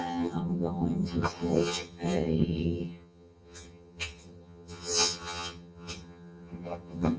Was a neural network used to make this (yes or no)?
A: yes